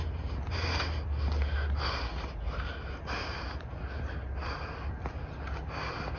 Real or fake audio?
real